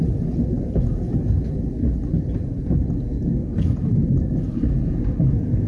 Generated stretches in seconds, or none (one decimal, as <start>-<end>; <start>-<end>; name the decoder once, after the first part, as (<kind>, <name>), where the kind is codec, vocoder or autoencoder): none